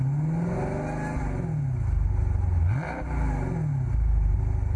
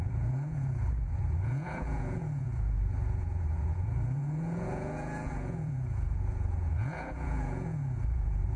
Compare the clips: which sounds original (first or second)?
first